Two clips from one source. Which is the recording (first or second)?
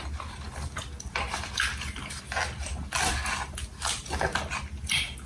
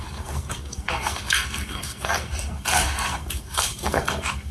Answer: first